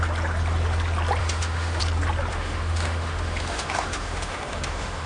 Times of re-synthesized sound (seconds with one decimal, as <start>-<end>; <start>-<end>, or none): 1.2-1.8; 2.3-5.1